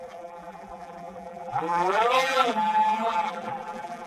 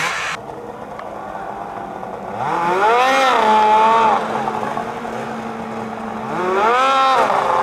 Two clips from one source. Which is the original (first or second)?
second